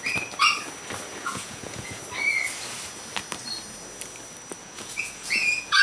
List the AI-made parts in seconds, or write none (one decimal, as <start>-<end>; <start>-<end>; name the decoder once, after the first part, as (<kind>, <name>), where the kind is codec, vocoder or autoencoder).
1.2-2.0 (vocoder, Vocos); 4.6-5.8